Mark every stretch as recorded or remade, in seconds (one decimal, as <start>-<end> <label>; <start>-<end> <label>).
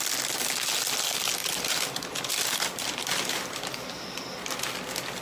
0.0-1.4 recorded; 1.4-4.5 remade; 4.5-5.2 recorded